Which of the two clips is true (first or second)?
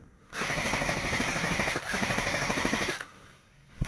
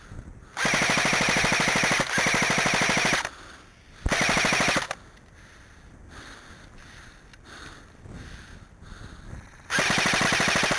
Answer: second